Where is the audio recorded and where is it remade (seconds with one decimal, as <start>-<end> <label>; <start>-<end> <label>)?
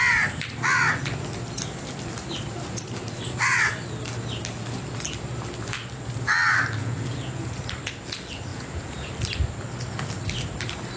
0.0-6.8 recorded; 6.8-7.6 remade; 7.6-8.5 recorded; 8.5-9.1 remade; 9.1-11.0 recorded